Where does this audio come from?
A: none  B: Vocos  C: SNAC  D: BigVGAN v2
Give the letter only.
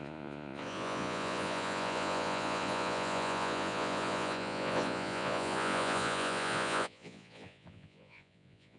B